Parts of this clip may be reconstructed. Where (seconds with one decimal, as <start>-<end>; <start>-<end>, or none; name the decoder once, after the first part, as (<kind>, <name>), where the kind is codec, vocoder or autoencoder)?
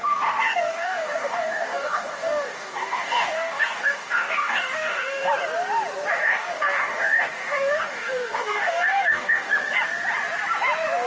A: 0.0-5.3 (codec, DAC); 6.2-9.5